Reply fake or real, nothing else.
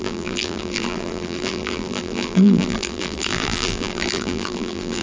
fake